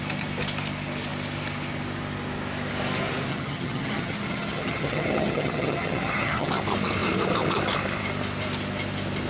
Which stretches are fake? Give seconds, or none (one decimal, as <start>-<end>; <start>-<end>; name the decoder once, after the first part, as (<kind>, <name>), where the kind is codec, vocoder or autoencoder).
3.3-6.5 (vocoder, HiFi-GAN)